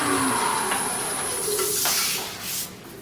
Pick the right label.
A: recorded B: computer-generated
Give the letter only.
A